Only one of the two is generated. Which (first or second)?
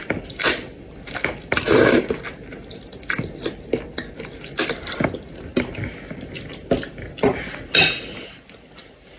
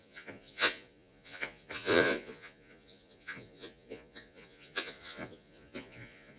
second